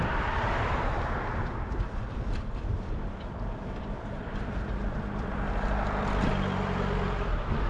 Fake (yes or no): yes